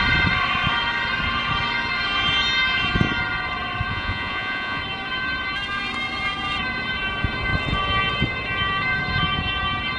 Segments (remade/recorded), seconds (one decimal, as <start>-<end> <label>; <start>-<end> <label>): 0.0-3.9 recorded; 3.9-4.8 remade; 4.8-10.0 recorded